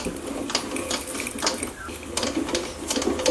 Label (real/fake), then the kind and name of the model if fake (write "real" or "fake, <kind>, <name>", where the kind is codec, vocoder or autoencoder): real